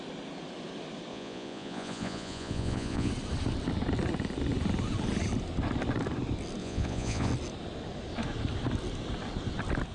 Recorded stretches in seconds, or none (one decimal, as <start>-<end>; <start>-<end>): 0.0-1.1; 3.1-6.6; 7.3-9.9